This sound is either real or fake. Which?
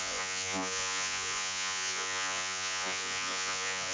fake